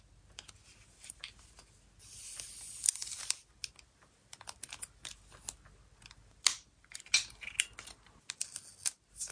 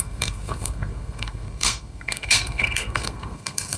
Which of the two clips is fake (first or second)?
second